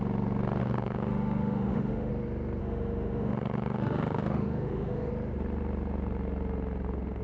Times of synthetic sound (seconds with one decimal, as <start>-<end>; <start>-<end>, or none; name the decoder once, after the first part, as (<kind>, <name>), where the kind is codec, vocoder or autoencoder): 0.6-2.1 (autoencoder, DAC-VAE); 2.6-5.1